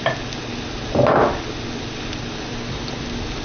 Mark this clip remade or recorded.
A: recorded